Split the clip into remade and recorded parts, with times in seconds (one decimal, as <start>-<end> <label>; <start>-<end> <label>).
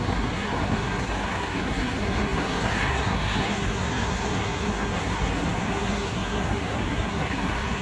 0.0-7.8 remade